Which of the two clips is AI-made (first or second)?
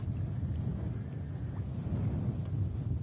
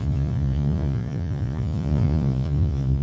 second